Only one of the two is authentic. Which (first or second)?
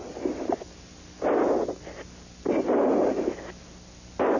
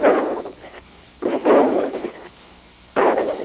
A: first